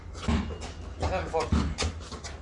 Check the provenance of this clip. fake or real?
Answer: real